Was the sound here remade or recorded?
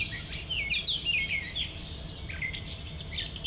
recorded